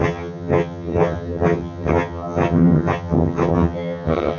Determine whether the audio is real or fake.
fake